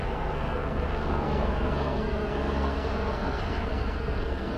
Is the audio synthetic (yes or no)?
yes